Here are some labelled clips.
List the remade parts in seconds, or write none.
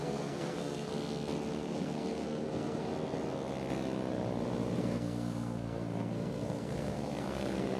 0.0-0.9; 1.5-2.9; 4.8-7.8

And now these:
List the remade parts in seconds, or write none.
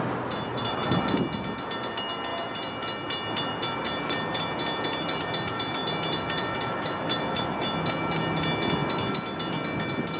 0.5-1.1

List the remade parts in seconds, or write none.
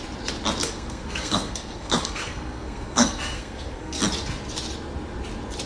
0.6-4.0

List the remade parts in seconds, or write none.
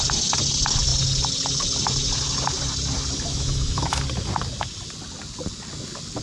3.3-4.0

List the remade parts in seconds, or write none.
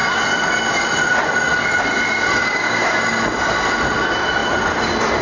2.4-2.9